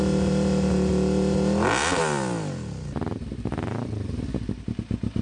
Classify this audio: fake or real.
real